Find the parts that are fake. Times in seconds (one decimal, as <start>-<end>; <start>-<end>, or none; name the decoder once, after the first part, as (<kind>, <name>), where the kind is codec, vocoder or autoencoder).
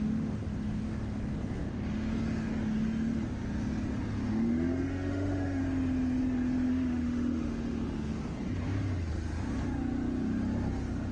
0.0-0.4 (autoencoder, DAC-VAE); 4.3-5.6; 6.7-8.1